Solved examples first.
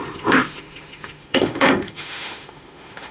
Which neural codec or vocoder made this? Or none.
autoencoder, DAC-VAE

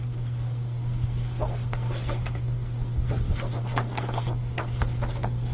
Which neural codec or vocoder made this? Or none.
codec, SNAC